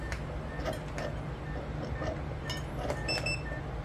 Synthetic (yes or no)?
no